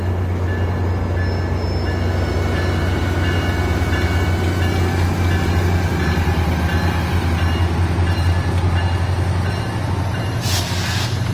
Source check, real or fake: real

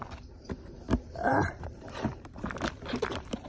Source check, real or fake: fake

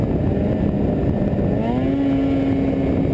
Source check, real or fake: real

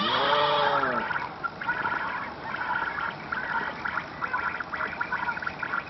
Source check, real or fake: real